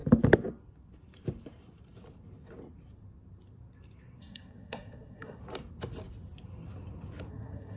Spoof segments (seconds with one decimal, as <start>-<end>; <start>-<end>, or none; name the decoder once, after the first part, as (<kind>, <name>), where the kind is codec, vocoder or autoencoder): 4.2-5.4 (codec, SNAC); 7.3-7.8